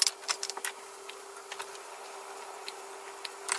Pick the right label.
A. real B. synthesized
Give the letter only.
A